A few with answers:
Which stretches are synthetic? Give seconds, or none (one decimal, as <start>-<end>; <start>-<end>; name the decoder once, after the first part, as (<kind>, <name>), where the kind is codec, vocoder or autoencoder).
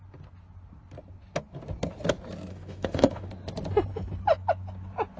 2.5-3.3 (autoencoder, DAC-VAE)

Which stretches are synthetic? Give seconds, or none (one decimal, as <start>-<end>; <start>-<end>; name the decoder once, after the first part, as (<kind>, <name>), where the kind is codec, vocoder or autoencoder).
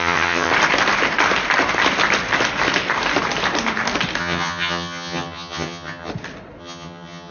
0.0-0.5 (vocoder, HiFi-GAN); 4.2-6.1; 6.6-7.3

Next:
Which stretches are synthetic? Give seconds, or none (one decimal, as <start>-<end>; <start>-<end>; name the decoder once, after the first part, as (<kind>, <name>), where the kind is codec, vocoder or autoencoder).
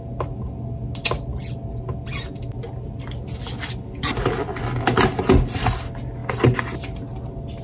none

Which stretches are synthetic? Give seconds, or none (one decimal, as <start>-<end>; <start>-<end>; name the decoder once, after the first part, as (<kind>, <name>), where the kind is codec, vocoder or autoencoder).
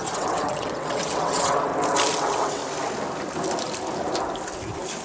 0.0-1.7 (vocoder, WaveNeXt); 2.2-2.6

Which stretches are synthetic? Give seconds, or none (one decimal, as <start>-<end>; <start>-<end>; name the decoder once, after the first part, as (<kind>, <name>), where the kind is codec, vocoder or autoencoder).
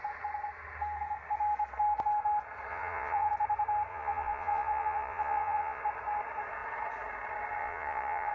2.7-3.3 (vocoder, Vocos); 3.9-5.8; 7.6-8.3